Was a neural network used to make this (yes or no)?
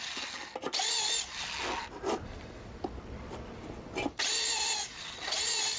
no